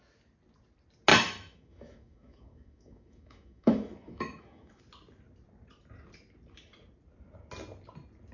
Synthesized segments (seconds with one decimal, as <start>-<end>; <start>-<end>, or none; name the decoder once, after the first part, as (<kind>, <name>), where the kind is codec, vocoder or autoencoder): 1.1-4.8 (autoencoder, DAC-VAE)